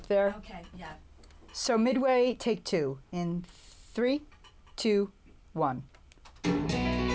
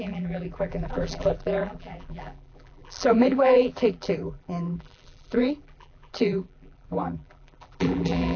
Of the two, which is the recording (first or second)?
first